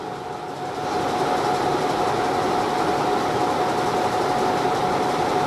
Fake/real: real